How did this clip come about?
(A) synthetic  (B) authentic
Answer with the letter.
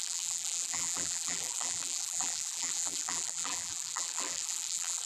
A